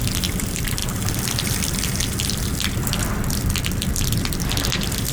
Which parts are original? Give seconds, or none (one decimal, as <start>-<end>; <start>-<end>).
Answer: 0.0-5.1